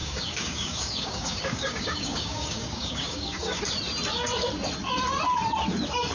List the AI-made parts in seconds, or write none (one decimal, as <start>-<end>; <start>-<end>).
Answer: 0.0-3.6

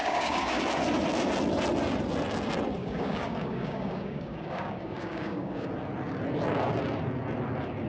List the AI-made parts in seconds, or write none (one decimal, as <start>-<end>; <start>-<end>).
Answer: 0.0-0.6; 2.8-5.7

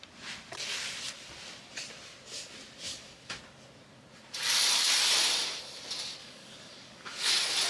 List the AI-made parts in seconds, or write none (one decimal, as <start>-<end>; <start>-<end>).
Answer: 2.9-3.4; 6.2-7.3